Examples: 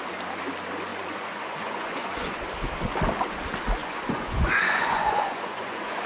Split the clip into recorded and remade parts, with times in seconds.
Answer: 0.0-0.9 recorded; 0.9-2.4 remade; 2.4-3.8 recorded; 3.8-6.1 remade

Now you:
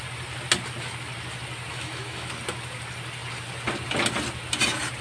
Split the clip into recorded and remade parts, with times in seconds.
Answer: 0.0-1.7 recorded; 1.7-2.3 remade; 2.3-5.0 recorded

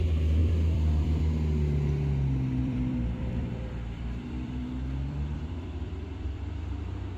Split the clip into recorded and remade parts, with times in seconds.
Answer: 0.0-0.4 recorded; 0.4-1.2 remade; 1.2-2.6 recorded; 2.6-6.8 remade; 6.8-7.2 recorded

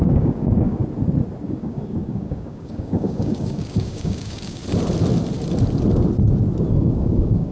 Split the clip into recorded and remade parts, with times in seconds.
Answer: 0.0-0.8 remade; 0.8-1.4 recorded; 1.4-4.6 remade; 4.6-6.7 recorded; 6.7-7.5 remade

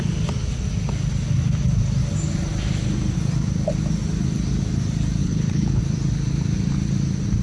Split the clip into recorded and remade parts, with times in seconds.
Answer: 0.0-5.2 recorded; 5.2-5.8 remade; 5.8-7.4 recorded

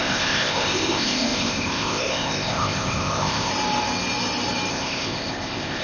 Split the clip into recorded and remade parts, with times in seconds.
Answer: 0.0-3.5 remade; 3.5-4.7 recorded; 4.7-5.8 remade